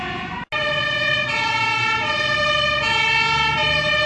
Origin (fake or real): real